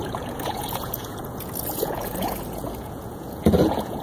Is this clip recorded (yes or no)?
no